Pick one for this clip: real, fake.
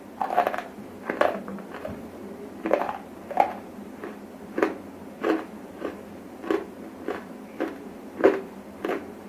fake